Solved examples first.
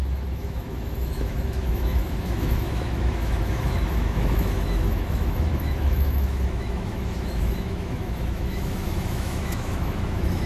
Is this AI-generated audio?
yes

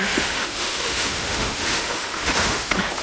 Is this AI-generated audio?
yes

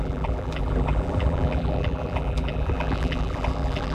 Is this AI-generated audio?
yes